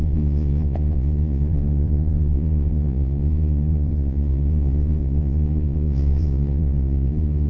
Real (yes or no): no